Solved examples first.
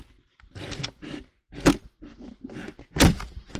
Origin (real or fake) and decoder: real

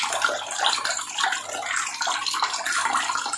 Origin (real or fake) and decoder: real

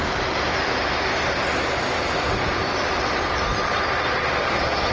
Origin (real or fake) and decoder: fake, vocoder, BigVGAN v2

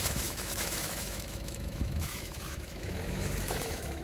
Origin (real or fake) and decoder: fake, autoencoder, DAC-VAE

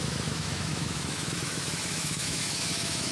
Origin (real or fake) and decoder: fake, autoencoder, DAC-VAE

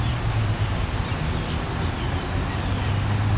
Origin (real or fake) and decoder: real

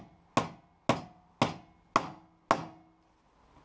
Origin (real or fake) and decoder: real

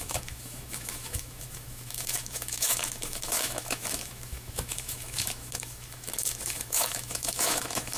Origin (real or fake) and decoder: fake, autoencoder, DAC-VAE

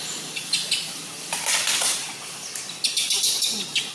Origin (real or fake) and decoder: real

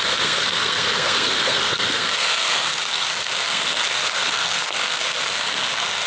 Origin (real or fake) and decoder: fake, codec, SNAC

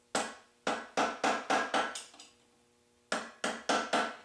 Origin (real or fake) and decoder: real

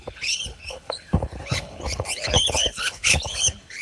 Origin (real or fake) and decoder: fake, codec, HILCodec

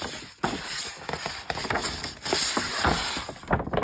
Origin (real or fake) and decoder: real